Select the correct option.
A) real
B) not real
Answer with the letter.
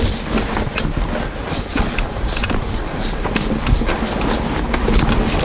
A